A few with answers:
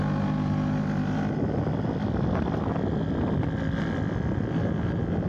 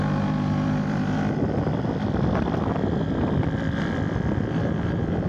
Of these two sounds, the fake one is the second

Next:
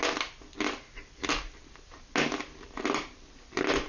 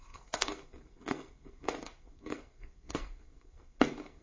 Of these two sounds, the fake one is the second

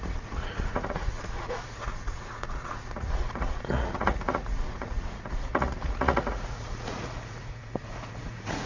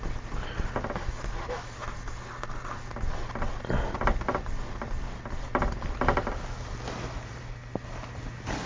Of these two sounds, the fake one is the first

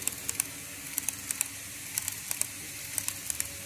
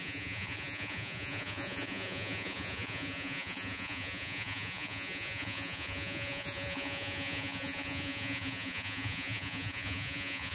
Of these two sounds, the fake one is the second